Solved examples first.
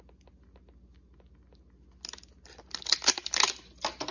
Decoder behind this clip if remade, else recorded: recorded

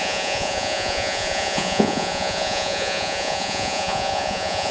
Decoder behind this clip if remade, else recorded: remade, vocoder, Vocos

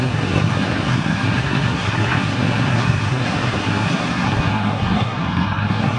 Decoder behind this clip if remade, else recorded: remade, codec, SNAC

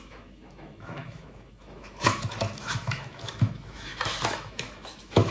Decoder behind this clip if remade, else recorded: remade, autoencoder, DAC-VAE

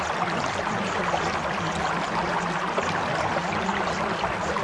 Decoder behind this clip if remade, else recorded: recorded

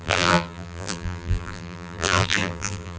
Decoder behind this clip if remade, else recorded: remade, vocoder, BigVGAN v2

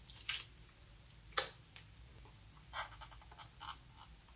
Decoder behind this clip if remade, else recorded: recorded